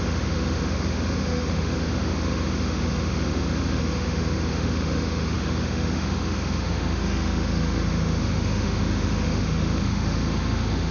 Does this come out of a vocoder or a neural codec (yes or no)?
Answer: yes